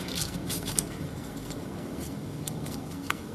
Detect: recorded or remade remade